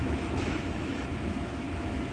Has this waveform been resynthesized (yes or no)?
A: yes